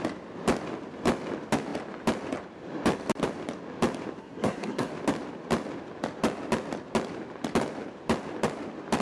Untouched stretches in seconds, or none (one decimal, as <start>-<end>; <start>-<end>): 0.0-4.2; 4.9-9.0